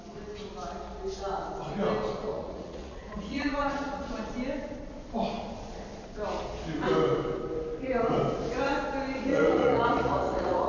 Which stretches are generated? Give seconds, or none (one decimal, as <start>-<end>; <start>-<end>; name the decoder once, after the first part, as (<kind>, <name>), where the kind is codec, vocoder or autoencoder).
2.3-4.3 (vocoder, Vocos); 9.3-10.7